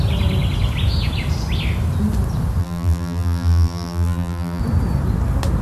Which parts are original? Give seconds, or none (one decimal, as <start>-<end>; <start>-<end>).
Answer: 0.0-2.6; 4.6-5.6